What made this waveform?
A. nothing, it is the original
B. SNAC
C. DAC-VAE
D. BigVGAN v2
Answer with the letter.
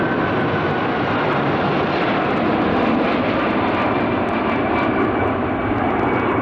A